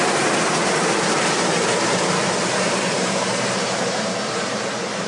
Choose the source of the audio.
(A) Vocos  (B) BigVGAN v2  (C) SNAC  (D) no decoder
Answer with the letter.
B